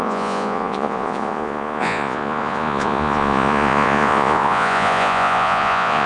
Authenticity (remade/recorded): remade